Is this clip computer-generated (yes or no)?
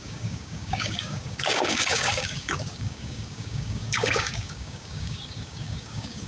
yes